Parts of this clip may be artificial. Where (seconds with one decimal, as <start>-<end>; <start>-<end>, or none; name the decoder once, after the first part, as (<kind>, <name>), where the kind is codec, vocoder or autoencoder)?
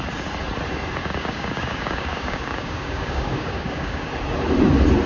1.0-4.1 (codec, DAC)